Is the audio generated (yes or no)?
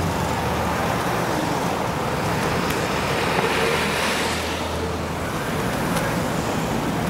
no